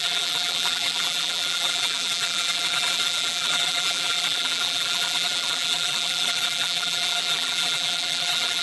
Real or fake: fake